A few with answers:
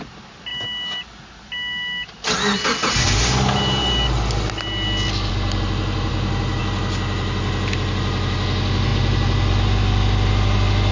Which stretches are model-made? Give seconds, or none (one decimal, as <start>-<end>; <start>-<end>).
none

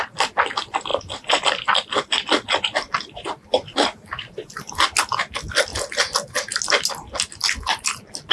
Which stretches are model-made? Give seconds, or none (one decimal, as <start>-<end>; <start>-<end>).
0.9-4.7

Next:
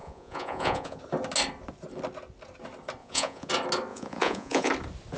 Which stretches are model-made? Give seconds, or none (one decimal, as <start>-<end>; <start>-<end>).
0.0-1.0; 3.0-3.5; 3.9-4.7